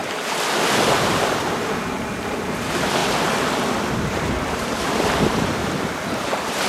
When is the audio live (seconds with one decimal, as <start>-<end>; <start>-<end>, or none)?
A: 0.0-1.1; 3.0-3.9; 5.6-6.1